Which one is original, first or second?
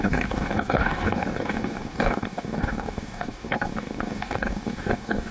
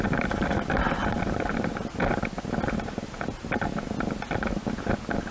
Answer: second